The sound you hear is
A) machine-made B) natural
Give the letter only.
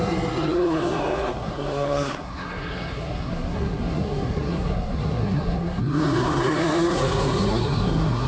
A